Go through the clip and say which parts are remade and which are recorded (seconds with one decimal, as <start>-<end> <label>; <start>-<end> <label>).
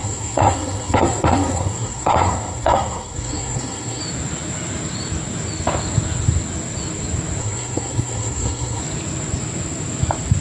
0.0-4.0 remade; 4.0-7.4 recorded; 7.4-8.8 remade; 8.8-10.4 recorded